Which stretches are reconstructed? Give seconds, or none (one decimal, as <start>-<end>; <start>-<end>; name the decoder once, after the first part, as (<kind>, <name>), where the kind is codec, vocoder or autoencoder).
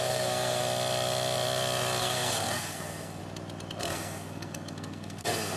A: 0.0-0.6 (codec, SNAC); 2.0-3.2; 3.8-5.6